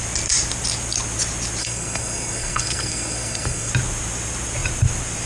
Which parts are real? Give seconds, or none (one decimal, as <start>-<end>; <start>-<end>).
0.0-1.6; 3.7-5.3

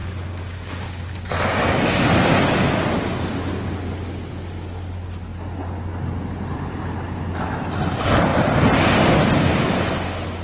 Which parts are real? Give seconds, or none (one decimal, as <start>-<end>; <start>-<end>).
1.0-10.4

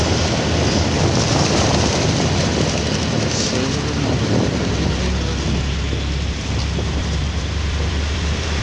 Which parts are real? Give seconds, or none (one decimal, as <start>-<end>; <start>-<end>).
2.5-6.3